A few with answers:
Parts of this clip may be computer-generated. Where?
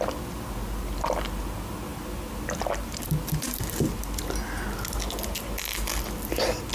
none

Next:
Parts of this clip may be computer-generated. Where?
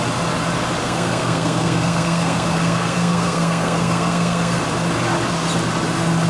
0.8-4.6 (codec, SNAC)